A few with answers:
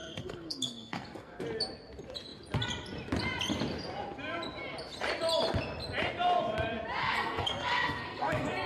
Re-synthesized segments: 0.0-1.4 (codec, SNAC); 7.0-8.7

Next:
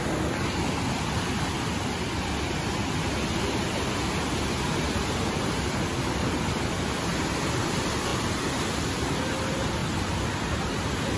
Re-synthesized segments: 9.8-10.3 (vocoder, BigVGAN v2)